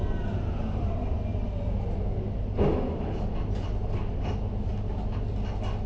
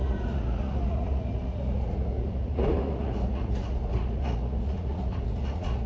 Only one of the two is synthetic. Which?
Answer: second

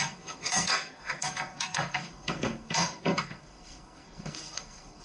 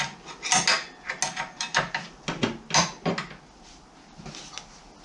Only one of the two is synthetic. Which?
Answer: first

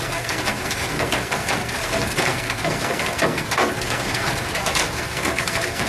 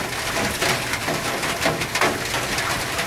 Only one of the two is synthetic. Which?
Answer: first